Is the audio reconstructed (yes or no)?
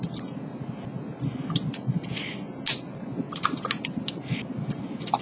no